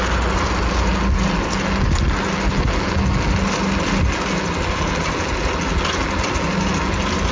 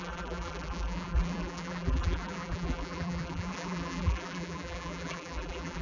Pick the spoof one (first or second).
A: second